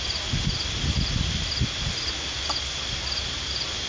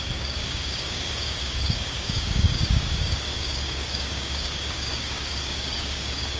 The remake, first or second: second